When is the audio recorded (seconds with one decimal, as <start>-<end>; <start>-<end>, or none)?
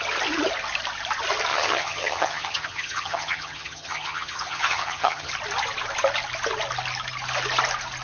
0.0-1.5; 5.3-8.0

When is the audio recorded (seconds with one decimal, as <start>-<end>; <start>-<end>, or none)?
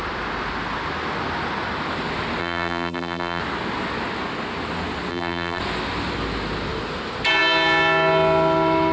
0.0-2.4; 3.4-5.1; 5.6-8.9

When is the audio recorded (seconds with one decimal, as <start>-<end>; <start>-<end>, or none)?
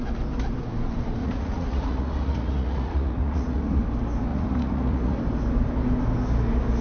0.0-1.2; 3.8-4.3; 5.2-6.8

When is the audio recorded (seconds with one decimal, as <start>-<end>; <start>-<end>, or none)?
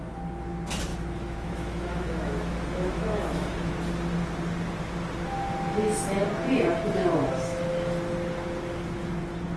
0.0-0.9; 3.7-7.0; 7.7-9.6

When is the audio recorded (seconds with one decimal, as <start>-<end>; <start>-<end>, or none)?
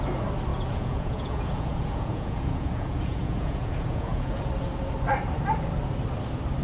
0.0-0.5; 4.5-6.6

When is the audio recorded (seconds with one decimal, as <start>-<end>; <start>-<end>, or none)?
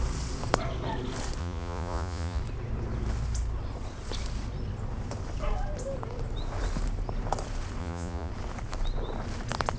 0.0-1.4; 2.4-7.8; 8.3-9.8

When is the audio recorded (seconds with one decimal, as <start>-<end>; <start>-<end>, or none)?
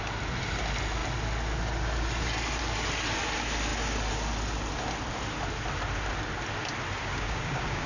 0.0-7.0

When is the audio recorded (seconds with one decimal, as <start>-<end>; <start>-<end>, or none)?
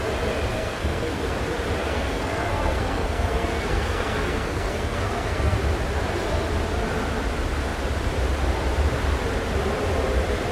0.0-0.5; 1.4-1.8; 5.6-10.5